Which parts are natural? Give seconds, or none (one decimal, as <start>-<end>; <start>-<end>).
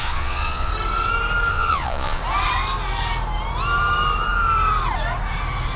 0.7-1.5; 2.2-5.8